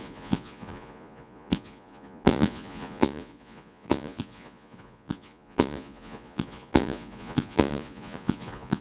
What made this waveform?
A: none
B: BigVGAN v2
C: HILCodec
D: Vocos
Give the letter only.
D